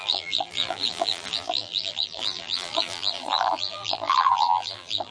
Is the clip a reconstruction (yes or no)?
yes